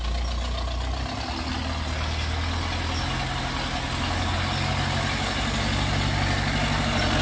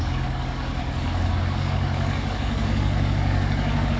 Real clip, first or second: first